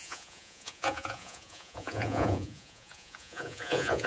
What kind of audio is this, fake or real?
fake